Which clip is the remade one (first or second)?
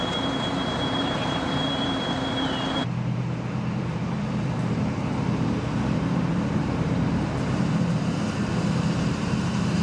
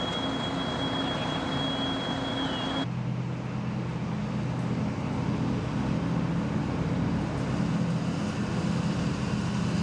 first